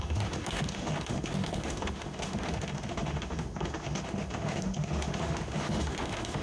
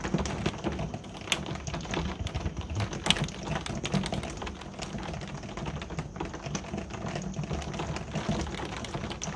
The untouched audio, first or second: second